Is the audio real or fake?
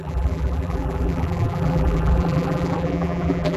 fake